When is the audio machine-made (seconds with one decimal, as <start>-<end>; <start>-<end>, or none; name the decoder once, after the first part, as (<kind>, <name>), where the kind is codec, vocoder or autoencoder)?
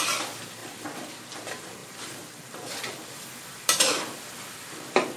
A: 0.6-1.4 (vocoder, BigVGAN v2); 1.8-5.2